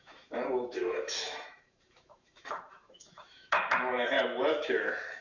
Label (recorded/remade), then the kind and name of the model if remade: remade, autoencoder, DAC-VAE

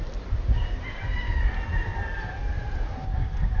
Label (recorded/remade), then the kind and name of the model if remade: recorded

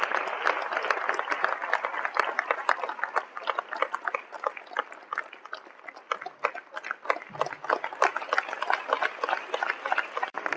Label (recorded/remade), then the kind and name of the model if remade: recorded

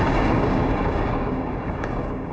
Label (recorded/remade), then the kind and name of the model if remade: remade, codec, DAC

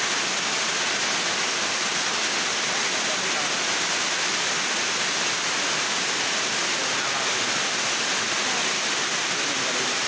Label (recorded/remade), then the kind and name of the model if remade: recorded